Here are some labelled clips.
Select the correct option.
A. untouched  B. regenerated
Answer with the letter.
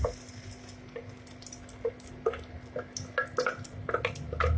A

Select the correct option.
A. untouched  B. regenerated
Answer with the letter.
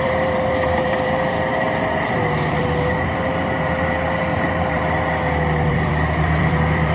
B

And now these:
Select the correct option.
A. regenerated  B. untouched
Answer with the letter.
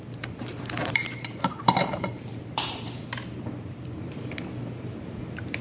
A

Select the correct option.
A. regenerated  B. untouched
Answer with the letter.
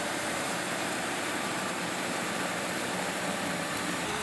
A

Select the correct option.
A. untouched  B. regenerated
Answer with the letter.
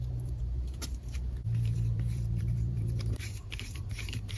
B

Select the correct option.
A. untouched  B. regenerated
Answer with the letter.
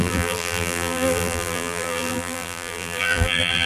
B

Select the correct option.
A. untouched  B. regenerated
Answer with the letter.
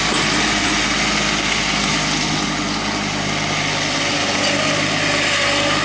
A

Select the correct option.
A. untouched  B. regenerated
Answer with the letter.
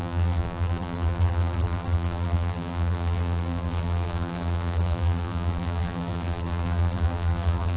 B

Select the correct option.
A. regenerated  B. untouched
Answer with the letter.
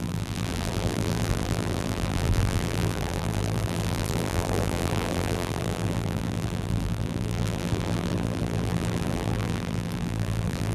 A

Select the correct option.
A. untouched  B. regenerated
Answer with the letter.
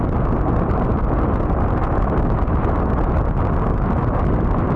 A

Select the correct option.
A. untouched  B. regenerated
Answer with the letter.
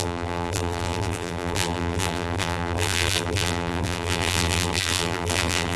B